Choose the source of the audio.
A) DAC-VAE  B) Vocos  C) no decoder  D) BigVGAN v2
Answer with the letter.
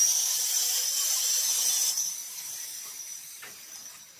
D